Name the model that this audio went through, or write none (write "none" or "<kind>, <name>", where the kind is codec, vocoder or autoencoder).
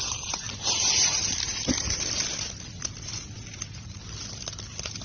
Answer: none